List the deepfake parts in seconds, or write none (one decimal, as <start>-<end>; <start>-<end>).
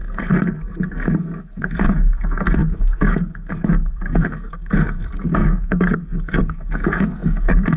0.0-7.8